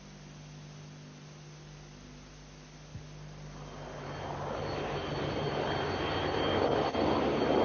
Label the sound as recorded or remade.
recorded